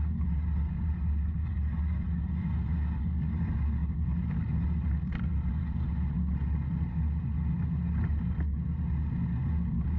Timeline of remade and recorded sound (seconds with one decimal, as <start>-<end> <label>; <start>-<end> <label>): 0.0-3.8 recorded; 3.8-5.5 remade; 5.5-10.0 recorded